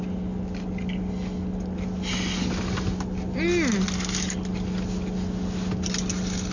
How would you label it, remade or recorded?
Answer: recorded